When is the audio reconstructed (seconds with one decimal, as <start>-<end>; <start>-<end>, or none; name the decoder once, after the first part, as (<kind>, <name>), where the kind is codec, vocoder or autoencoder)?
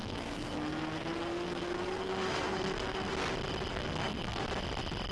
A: 0.0-3.1 (codec, SNAC); 3.7-4.4